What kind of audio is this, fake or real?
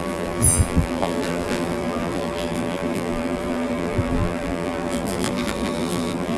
fake